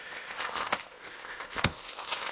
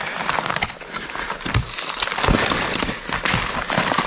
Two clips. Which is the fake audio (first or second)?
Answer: first